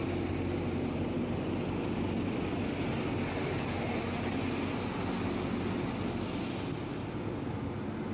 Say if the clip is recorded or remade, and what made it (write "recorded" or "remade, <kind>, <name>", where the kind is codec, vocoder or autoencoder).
recorded